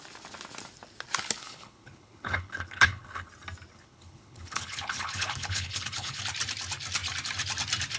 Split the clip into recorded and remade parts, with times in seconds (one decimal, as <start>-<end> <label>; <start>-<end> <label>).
0.0-1.4 recorded; 1.4-3.3 remade; 3.3-3.7 recorded; 3.7-6.2 remade; 6.2-8.0 recorded